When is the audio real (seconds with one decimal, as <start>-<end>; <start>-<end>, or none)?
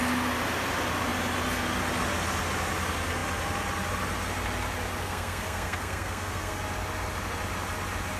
0.0-5.0; 6.6-8.2